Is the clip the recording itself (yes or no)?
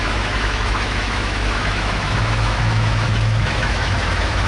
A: no